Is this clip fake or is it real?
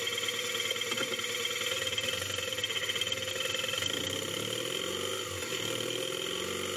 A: real